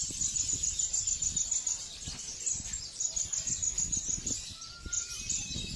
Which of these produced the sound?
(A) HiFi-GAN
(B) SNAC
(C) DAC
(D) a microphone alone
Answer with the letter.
D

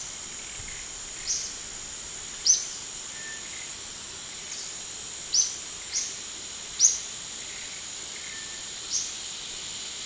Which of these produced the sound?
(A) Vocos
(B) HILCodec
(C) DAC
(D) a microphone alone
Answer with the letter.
D